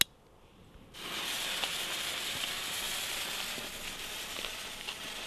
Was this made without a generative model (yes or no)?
yes